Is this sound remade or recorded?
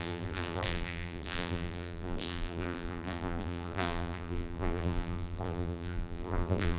remade